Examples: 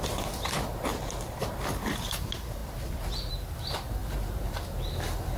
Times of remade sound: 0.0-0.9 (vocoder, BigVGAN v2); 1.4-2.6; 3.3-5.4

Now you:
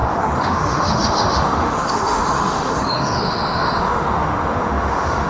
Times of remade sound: 0.0-5.3 (autoencoder, DAC-VAE)

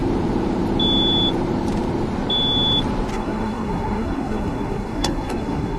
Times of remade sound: 3.1-5.8 (codec, SNAC)

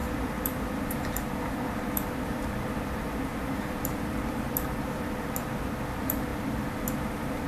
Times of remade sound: 0.0-7.5 (vocoder, BigVGAN v2)

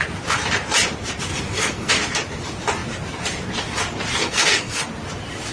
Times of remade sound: 1.3-1.9 (codec, SNAC); 4.2-4.8

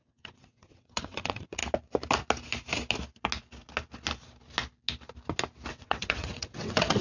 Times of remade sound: 0.0-1.6 (vocoder, WaveNeXt); 5.7-7.0